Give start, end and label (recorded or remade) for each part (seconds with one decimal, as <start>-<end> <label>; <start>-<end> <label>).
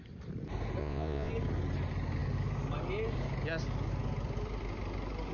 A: 0.0-0.8 recorded; 0.8-1.3 remade; 1.3-5.3 recorded